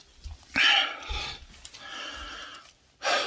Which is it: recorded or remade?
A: recorded